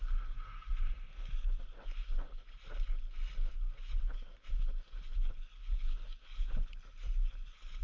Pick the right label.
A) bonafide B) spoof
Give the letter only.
A